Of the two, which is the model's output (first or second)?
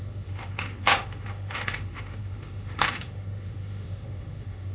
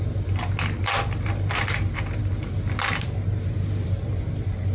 first